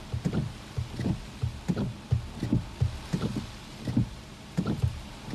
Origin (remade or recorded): recorded